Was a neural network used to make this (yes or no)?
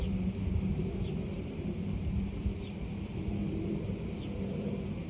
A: yes